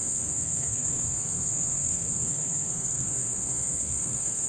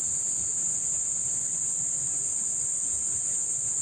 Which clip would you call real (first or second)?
second